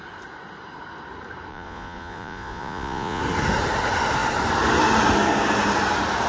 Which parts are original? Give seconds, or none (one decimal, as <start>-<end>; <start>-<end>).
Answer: 0.0-1.5; 3.2-6.3

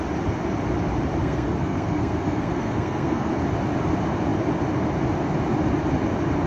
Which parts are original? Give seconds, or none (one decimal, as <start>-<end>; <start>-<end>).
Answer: 0.0-1.2; 3.3-6.5

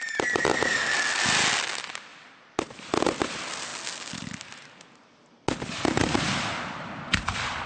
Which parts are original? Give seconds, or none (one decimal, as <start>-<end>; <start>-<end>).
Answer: 0.0-7.7

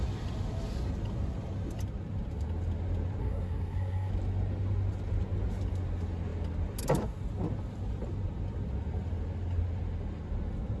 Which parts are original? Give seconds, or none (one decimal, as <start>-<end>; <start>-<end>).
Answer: 0.0-3.2; 4.1-10.8

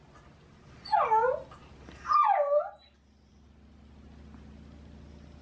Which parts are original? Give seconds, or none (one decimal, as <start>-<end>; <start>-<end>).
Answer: 0.0-5.4